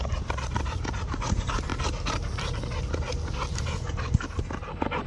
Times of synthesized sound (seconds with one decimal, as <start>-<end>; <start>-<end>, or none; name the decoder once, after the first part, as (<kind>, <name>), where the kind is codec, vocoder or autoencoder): none